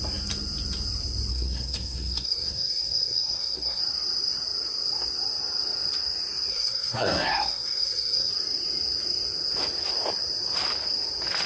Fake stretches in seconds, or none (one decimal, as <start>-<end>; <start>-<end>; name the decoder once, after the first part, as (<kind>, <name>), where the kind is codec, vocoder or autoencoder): 1.3-3.8 (codec, SNAC); 6.5-8.3